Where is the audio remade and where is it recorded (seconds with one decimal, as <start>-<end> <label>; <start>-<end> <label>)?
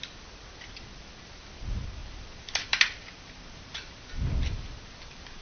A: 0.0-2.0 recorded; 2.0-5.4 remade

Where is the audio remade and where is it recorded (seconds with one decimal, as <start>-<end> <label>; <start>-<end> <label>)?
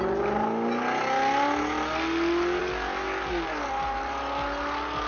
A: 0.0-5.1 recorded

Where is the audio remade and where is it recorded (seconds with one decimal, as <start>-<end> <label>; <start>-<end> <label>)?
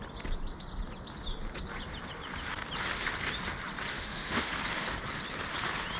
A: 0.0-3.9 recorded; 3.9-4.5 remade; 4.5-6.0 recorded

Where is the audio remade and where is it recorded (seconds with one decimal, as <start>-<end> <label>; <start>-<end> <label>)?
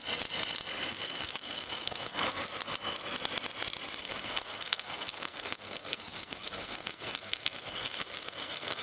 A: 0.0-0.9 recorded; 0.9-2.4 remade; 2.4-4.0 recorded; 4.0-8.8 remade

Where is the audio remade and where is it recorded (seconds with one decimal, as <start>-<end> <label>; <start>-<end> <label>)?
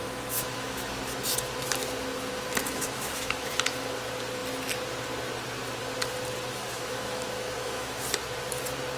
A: 0.0-1.0 remade; 1.0-2.6 recorded; 2.6-3.5 remade; 3.5-6.5 recorded; 6.5-8.0 remade; 8.0-9.0 recorded